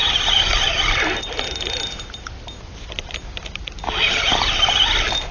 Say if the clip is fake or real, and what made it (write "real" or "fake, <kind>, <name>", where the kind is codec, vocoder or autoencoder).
real